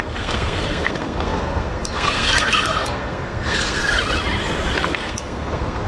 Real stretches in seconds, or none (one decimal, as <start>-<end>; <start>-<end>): 3.8-4.9